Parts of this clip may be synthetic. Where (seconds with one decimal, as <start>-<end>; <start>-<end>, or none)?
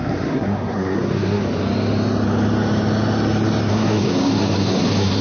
0.0-1.4; 3.7-5.2